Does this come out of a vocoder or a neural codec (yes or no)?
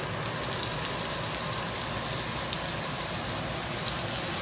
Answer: no